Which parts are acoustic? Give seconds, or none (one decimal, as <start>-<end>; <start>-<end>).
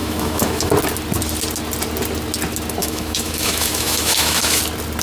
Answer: 0.7-2.8; 4.6-5.0